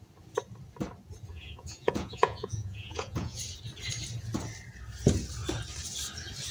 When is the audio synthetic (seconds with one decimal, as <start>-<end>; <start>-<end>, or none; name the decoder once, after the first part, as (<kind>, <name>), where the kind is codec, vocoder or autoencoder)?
1.3-3.4 (vocoder, Vocos)